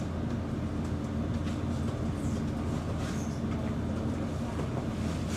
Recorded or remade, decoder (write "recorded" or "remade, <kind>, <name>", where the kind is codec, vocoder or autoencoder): recorded